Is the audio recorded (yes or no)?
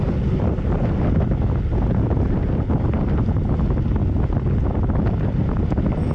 yes